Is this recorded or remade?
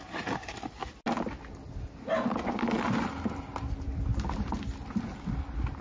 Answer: recorded